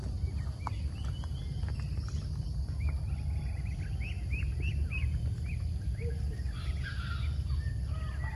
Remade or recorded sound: recorded